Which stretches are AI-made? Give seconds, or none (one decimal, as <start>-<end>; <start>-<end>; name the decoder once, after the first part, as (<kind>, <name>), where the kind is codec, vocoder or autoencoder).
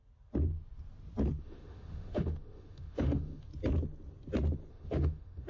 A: 1.4-3.5 (autoencoder, DAC-VAE); 4.7-5.5